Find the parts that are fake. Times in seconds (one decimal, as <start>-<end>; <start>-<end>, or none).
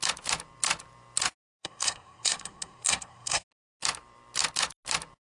1.6-3.4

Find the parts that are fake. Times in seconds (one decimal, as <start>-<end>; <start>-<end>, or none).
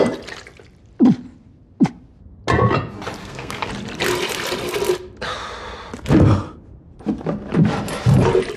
3.2-3.7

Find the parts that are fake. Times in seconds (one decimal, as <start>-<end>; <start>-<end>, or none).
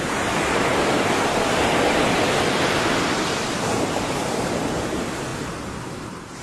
none